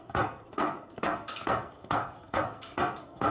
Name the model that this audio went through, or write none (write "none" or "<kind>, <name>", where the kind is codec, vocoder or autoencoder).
codec, SNAC